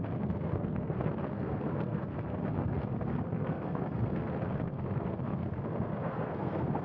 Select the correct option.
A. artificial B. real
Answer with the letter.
A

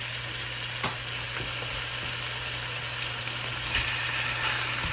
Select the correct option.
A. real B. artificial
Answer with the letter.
A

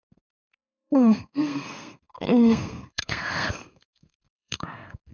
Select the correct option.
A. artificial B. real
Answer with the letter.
A